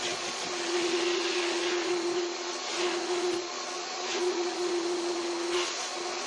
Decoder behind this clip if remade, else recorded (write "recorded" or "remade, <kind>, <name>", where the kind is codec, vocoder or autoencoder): remade, vocoder, Vocos